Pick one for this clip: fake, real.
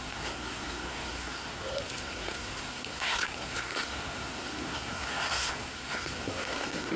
fake